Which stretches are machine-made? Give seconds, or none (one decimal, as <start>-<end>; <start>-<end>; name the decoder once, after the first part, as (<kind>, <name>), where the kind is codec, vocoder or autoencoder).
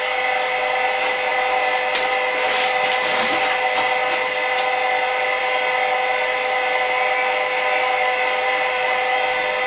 none